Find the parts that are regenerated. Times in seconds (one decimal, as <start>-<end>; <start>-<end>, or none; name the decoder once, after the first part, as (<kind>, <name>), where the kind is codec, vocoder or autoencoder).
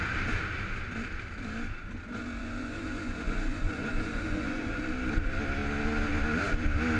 2.4-4.8 (vocoder, Vocos)